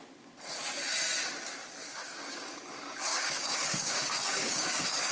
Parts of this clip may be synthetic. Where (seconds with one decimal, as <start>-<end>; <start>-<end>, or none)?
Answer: 1.9-2.5; 3.1-5.1